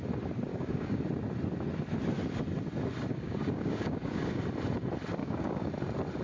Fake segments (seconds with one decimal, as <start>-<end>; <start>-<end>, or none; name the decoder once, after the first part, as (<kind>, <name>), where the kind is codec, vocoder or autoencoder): 0.5-1.0 (codec, DAC); 3.1-4.4; 5.2-5.7